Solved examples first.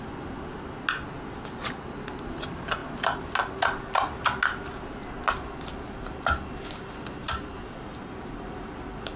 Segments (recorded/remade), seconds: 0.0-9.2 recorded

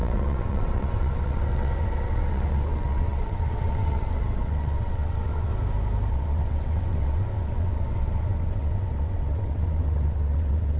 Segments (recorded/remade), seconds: 0.0-5.5 remade; 5.5-6.1 recorded; 6.1-10.8 remade

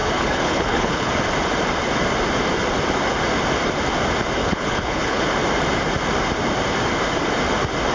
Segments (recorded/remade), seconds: 0.0-1.1 remade; 1.1-4.4 recorded; 4.4-5.2 remade; 5.2-7.9 recorded

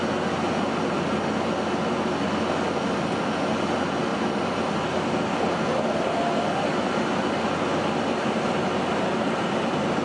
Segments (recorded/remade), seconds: 0.0-10.0 recorded

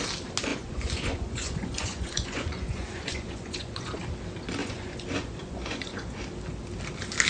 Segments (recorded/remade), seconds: 0.0-0.5 recorded; 0.5-4.0 remade; 4.0-4.6 recorded; 4.6-6.2 remade; 6.2-7.3 recorded